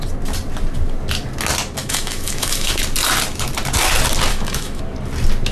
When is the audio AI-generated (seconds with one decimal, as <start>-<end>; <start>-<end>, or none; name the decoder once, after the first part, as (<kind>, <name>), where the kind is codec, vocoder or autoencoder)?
1.8-2.8 (autoencoder, DAC-VAE); 4.3-4.8